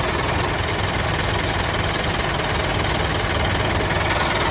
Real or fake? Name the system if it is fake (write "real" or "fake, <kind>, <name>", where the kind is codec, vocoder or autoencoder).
real